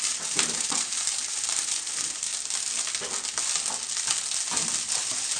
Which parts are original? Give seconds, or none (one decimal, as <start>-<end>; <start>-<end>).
2.3-4.9

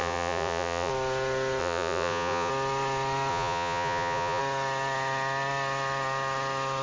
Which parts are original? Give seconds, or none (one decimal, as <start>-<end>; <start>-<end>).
0.9-1.6; 2.5-3.3; 4.4-6.8

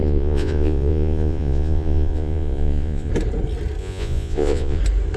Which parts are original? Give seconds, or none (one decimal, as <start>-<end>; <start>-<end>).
3.1-3.8; 4.8-5.2